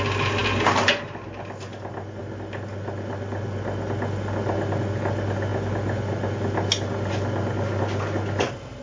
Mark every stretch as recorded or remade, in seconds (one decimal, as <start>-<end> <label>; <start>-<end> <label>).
0.0-8.8 recorded